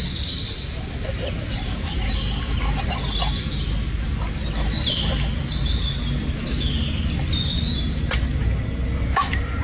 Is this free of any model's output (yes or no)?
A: yes